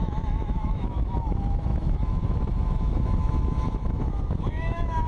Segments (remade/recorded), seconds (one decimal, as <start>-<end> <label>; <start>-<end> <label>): 0.0-5.1 remade